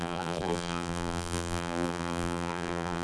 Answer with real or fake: fake